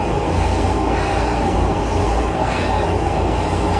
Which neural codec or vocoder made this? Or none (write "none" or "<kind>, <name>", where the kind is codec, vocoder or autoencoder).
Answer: codec, SNAC